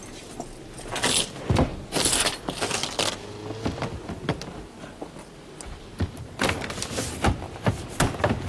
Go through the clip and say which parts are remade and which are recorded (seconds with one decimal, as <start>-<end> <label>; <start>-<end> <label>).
0.0-8.5 recorded